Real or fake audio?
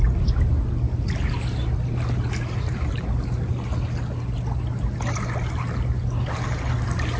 real